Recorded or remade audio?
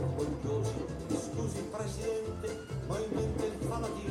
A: recorded